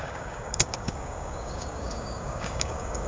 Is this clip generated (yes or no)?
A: yes